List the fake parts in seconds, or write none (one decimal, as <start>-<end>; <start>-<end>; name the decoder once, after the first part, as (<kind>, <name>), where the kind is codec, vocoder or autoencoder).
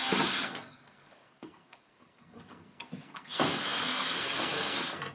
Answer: 0.0-5.1 (codec, SNAC)